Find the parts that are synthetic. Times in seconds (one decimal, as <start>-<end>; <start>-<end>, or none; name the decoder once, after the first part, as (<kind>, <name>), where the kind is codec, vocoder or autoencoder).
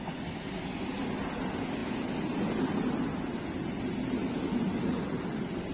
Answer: 4.2-5.7 (vocoder, BigVGAN v2)